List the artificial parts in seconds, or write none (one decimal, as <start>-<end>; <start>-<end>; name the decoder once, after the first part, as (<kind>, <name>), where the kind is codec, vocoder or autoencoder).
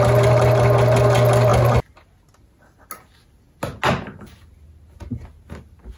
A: none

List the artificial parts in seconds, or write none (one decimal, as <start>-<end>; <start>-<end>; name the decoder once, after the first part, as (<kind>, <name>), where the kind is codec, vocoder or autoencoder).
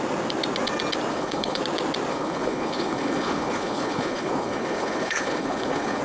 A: 1.1-1.6 (codec, HILCodec); 2.1-6.0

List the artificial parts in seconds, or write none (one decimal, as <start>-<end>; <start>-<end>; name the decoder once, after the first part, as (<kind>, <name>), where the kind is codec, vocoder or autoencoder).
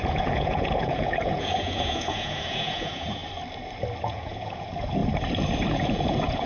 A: 0.0-3.2 (vocoder, Vocos); 4.0-5.0; 5.7-6.5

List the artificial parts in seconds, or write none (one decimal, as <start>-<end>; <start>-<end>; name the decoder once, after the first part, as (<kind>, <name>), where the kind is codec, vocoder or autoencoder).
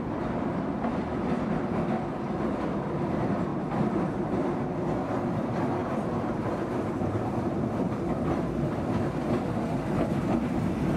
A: 0.0-3.5 (vocoder, BigVGAN v2); 4.0-11.0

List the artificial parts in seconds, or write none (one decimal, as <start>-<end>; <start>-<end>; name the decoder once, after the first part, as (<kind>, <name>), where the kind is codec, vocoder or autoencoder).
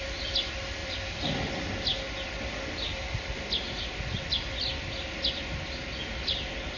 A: 0.8-1.5 (vocoder, BigVGAN v2)